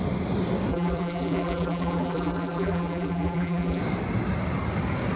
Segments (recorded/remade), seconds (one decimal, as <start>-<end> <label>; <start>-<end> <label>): 0.0-0.7 recorded; 0.7-3.8 remade; 3.8-5.2 recorded